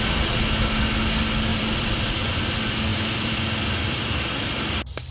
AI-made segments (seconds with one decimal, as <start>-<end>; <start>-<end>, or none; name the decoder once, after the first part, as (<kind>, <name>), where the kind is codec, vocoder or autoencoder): 1.5-2.4 (vocoder, BigVGAN v2); 2.9-4.0